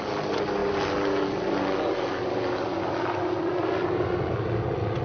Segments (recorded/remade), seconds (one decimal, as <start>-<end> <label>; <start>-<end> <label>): 0.0-5.0 recorded